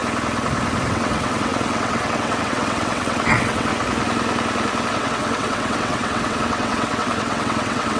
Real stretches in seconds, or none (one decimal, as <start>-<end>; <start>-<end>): 0.0-0.9; 3.7-4.9